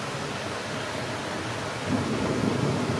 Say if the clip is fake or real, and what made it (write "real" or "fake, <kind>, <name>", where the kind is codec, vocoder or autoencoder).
real